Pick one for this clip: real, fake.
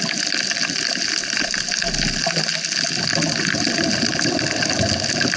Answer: real